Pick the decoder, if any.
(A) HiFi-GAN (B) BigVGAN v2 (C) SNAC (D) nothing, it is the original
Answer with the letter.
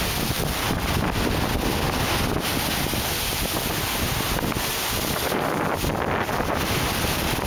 D